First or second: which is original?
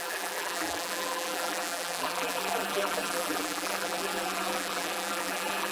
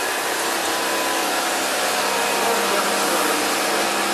second